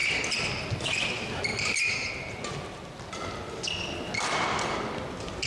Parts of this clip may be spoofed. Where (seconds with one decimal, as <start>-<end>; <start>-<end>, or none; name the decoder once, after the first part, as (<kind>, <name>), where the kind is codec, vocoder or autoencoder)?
none